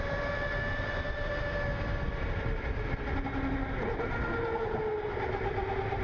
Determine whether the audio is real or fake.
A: real